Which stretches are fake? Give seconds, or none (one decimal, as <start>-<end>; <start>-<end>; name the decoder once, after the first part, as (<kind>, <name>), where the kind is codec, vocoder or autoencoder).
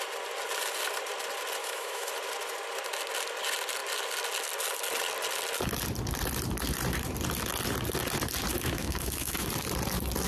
1.6-2.1 (autoencoder, DAC-VAE); 8.5-9.5